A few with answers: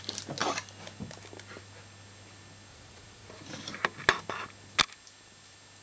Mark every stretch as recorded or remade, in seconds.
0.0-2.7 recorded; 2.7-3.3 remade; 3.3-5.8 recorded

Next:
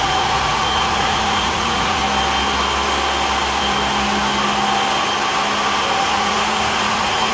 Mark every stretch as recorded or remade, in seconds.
0.0-2.0 remade; 2.0-6.0 recorded; 6.0-7.3 remade

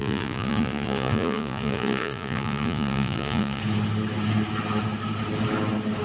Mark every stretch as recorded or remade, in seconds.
0.0-3.6 remade; 3.6-6.0 recorded

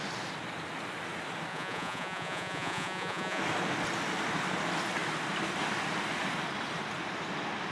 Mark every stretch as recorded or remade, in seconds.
0.0-1.5 recorded; 1.5-3.4 remade; 3.4-7.7 recorded